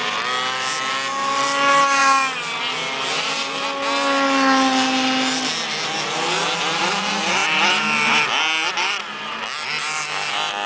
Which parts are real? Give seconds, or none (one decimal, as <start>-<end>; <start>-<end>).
0.0-10.7